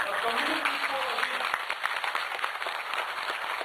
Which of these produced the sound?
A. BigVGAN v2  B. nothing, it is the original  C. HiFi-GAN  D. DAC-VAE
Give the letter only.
B